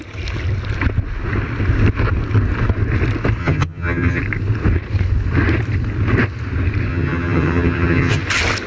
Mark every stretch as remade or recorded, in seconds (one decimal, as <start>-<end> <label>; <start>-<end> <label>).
0.0-3.4 recorded; 3.4-4.2 remade; 4.2-6.9 recorded; 6.9-8.2 remade; 8.2-8.7 recorded